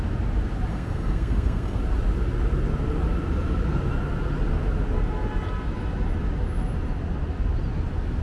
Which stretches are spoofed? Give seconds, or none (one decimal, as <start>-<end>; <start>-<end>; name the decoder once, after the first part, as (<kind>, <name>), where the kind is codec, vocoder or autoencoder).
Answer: 0.7-1.8 (codec, SNAC)

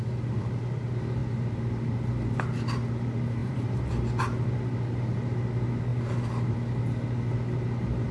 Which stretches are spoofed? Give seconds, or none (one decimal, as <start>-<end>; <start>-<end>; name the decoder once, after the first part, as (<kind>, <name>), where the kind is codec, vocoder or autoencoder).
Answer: 1.2-2.0 (vocoder, BigVGAN v2); 3.4-4.1

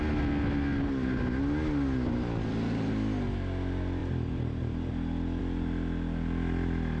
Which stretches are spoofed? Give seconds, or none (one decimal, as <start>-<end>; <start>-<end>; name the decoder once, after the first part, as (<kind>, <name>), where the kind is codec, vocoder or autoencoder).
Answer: none

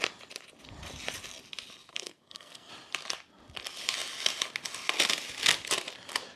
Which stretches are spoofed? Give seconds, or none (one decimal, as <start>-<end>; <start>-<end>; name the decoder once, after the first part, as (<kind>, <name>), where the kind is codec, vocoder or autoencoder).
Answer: 1.9-2.7 (codec, SNAC)